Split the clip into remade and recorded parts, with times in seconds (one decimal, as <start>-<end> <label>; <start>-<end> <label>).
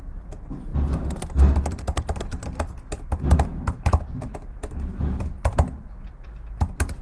0.0-7.0 recorded